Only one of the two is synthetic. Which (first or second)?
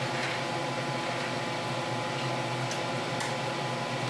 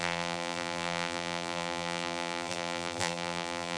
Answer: second